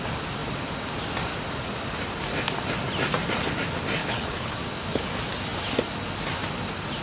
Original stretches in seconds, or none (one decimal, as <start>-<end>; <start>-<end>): 0.0-4.0; 4.6-7.0